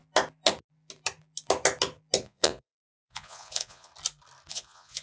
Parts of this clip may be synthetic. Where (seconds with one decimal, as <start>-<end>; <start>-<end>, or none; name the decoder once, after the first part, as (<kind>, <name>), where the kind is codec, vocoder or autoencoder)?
2.2-3.9 (vocoder, Vocos); 4.5-5.0